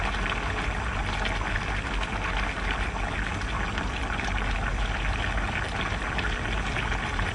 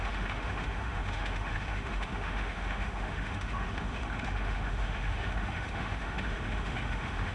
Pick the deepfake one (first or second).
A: second